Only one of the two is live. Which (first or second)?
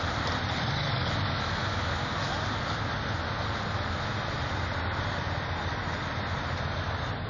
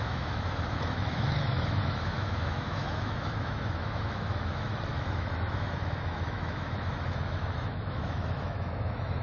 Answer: first